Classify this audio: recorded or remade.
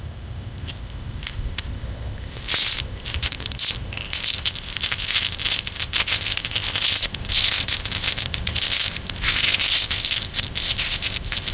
remade